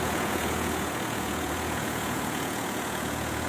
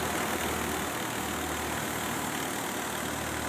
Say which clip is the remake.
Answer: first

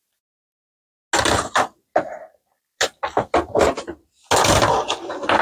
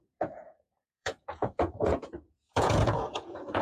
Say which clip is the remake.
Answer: second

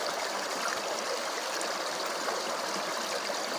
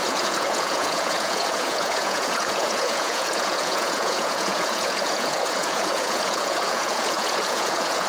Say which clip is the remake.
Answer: second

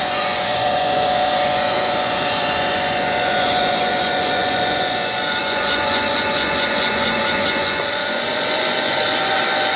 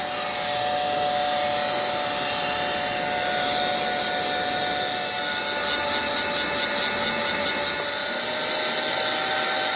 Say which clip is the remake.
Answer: first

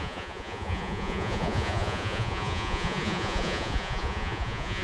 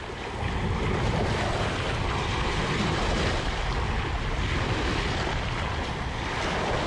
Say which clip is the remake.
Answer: first